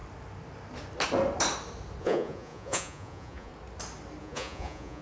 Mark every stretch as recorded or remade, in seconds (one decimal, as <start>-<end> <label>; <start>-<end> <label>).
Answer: 0.0-2.0 recorded; 2.0-3.5 remade; 3.5-4.2 recorded; 4.2-5.0 remade